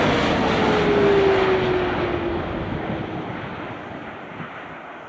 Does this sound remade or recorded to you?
recorded